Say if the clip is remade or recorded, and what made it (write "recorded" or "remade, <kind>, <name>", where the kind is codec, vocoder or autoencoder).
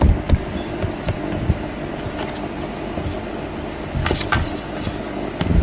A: recorded